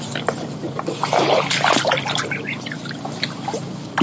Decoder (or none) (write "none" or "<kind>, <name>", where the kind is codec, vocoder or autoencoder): vocoder, BigVGAN v2